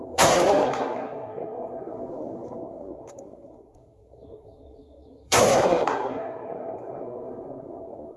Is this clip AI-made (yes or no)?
yes